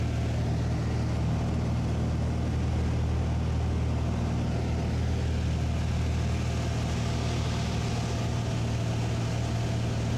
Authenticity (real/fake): real